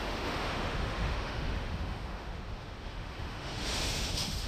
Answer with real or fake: fake